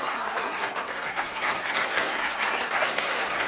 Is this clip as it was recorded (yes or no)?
no